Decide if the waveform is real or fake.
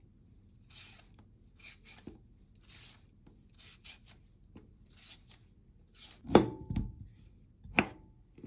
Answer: real